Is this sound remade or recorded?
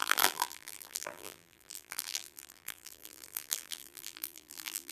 remade